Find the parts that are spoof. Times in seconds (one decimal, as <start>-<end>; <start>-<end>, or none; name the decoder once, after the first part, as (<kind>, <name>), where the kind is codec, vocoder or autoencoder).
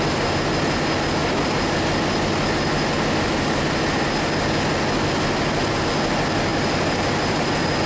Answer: 6.5-7.5 (vocoder, BigVGAN v2)